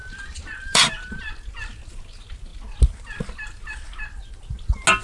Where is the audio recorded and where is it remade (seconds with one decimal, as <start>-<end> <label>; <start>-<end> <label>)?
0.0-1.2 remade; 1.2-5.0 recorded